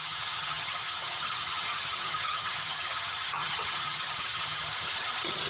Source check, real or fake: fake